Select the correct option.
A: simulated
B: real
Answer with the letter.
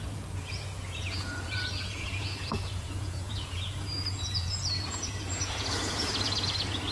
A